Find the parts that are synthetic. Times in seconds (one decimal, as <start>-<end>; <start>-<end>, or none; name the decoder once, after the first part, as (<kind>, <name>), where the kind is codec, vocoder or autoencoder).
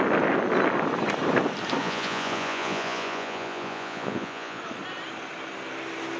1.8-4.6 (vocoder, Vocos)